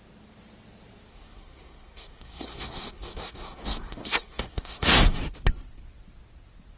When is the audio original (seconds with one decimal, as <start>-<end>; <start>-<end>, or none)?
0.0-1.1; 5.2-6.8